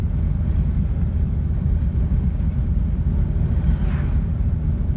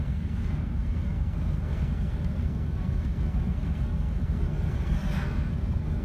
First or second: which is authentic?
first